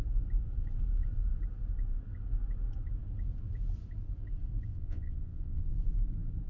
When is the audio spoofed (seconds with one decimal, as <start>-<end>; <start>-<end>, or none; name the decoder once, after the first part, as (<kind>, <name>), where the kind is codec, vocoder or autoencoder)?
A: 4.7-5.7 (vocoder, Vocos)